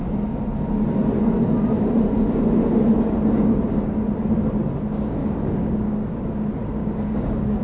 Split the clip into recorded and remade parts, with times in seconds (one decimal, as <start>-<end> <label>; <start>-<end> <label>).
0.0-5.2 recorded; 5.2-6.2 remade; 6.2-6.8 recorded; 6.8-7.6 remade